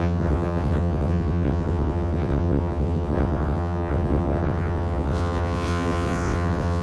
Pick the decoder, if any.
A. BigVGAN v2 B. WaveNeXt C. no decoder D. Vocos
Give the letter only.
B